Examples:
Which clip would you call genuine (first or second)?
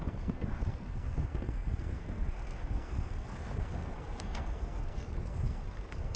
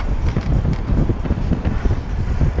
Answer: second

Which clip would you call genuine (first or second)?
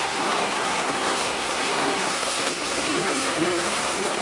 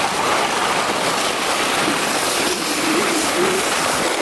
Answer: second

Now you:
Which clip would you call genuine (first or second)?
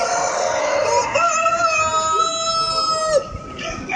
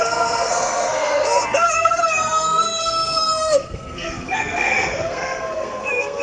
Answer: first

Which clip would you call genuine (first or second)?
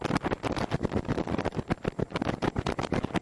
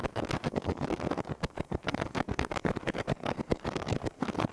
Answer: first